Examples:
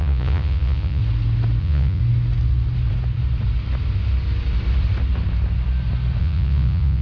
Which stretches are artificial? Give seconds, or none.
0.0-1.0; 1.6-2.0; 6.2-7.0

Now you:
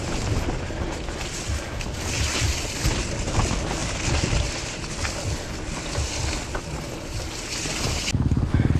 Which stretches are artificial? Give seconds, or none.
none